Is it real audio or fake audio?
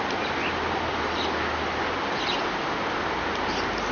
real